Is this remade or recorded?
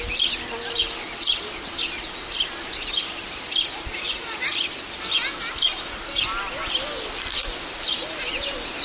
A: recorded